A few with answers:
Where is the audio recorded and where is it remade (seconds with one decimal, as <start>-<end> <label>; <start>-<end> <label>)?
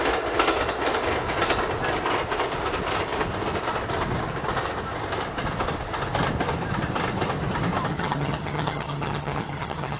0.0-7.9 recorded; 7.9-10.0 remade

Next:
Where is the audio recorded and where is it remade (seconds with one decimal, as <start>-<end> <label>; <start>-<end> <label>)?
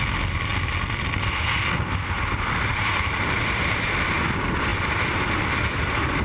0.0-6.2 recorded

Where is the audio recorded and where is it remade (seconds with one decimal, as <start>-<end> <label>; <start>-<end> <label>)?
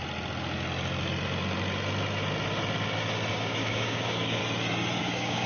0.0-3.3 recorded; 3.3-4.4 remade; 4.4-5.0 recorded; 5.0-5.5 remade